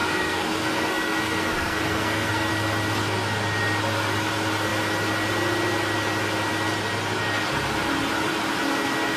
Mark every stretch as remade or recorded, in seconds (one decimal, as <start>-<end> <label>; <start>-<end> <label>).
0.0-2.5 remade; 2.5-9.2 recorded